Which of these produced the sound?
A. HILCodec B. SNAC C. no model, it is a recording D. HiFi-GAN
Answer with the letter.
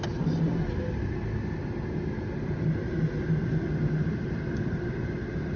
C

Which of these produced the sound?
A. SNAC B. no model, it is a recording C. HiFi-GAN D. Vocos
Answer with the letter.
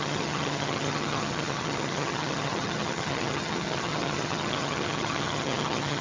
C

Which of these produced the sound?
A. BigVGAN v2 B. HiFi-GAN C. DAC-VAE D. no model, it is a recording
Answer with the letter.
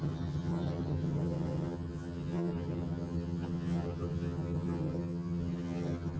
B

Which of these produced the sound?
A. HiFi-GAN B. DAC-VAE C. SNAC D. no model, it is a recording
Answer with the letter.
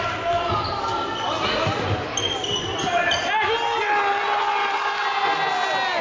D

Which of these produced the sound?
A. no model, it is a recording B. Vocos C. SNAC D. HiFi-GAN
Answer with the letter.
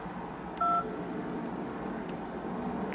A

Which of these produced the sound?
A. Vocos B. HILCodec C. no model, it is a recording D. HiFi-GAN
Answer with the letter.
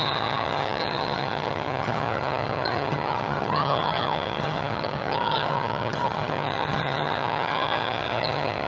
D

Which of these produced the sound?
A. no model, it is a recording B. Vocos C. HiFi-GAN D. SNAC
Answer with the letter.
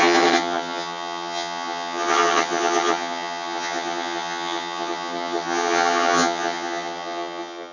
C